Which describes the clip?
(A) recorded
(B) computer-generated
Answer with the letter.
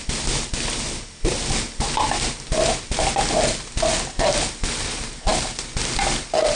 A